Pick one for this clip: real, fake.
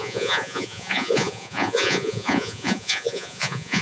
fake